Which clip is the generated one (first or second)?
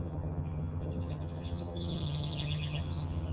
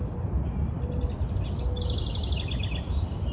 first